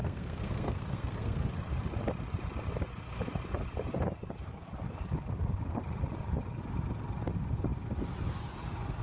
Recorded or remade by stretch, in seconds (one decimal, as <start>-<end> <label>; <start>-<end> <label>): 0.0-1.5 remade; 1.5-9.0 recorded